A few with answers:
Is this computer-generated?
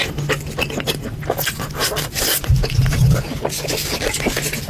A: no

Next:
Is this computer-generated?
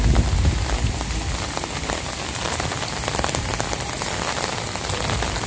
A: no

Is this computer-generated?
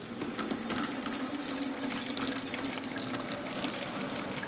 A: no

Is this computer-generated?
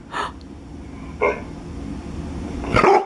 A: no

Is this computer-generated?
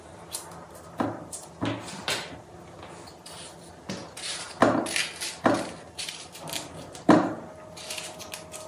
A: no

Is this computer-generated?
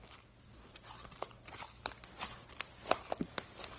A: no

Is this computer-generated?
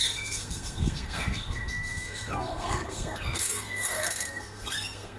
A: yes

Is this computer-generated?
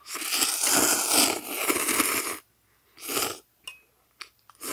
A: no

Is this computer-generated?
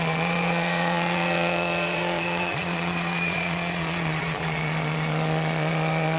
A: yes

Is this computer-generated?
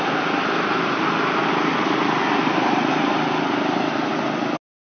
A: no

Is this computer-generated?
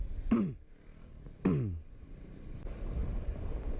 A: no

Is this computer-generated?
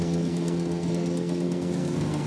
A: yes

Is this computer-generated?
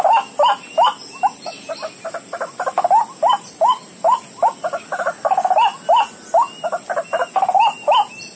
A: no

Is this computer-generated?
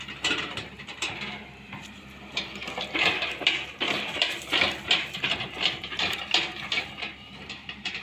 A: yes